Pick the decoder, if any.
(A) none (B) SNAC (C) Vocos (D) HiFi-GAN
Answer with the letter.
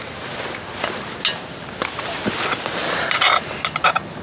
A